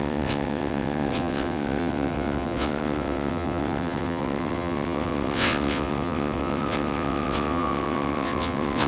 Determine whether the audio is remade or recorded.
remade